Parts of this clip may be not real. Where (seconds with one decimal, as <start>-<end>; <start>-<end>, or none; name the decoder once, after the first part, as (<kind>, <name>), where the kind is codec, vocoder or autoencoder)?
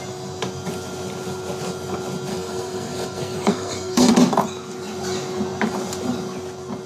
2.3-4.1 (codec, SNAC)